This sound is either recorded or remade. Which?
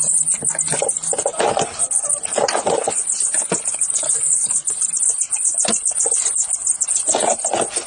recorded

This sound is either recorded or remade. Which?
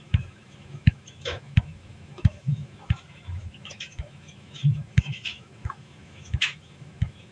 remade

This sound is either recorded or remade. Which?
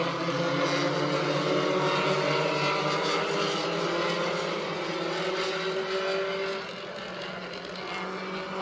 recorded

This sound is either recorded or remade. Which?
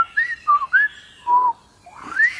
recorded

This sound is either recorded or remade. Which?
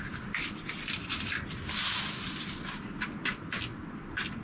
recorded